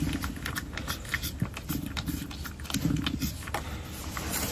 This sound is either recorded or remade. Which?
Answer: recorded